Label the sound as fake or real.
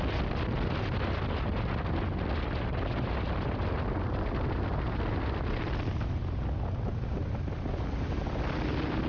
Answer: real